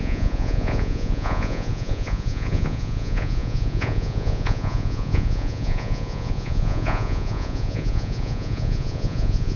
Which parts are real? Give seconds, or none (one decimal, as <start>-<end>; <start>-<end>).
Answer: none